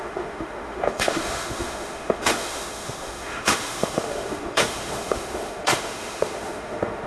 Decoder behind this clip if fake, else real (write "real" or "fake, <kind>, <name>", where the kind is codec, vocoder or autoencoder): fake, autoencoder, DAC-VAE